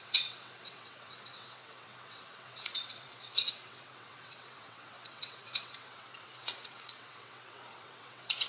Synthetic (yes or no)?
yes